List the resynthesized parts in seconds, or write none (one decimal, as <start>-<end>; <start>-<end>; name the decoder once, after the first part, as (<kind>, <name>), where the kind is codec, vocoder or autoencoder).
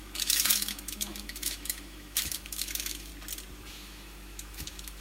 0.0-3.1 (autoencoder, DAC-VAE); 3.7-5.0